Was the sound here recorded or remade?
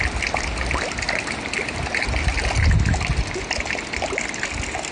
recorded